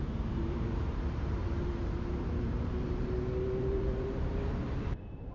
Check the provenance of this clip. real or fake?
fake